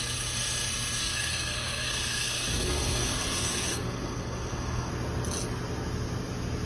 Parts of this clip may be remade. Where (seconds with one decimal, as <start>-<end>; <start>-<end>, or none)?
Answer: 1.0-4.9